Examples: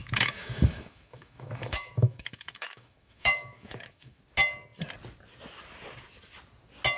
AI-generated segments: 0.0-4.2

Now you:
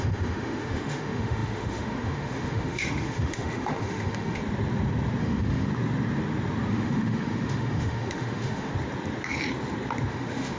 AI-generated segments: 0.0-4.4; 5.2-5.7; 6.7-8.7; 10.1-10.6

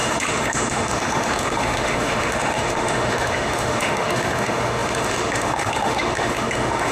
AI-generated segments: 0.0-6.9